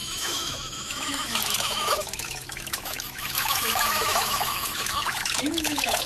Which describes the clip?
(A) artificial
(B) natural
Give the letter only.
A